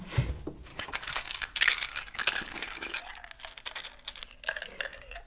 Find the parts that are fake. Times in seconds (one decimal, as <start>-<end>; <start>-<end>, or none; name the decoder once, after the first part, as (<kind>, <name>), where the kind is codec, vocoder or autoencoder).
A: 0.7-3.0 (codec, DAC)